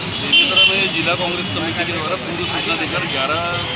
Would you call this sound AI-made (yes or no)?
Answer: no